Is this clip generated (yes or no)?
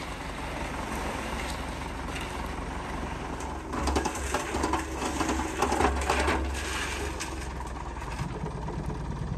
no